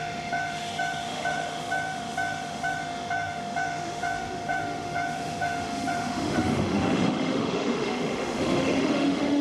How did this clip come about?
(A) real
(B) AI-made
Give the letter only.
B